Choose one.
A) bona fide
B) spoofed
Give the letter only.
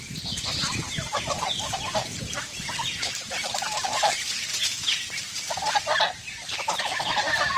A